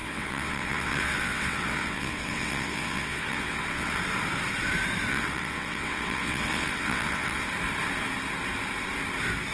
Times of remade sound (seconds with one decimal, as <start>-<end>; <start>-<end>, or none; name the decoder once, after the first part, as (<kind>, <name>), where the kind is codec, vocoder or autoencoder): 0.0-4.0 (vocoder, WaveNeXt); 5.1-7.4